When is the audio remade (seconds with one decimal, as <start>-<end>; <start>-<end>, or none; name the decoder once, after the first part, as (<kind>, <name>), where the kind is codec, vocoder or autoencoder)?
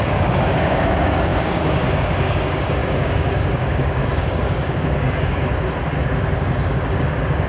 0.0-5.4 (codec, DAC); 6.7-7.5